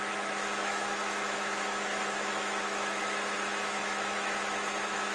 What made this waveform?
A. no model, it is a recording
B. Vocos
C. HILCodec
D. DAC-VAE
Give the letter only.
D